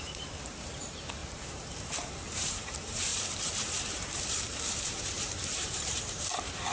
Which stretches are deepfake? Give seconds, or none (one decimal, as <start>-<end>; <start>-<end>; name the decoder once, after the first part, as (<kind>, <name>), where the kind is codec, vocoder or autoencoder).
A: 0.0-6.7 (vocoder, BigVGAN v2)